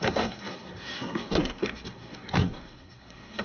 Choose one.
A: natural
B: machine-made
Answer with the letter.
B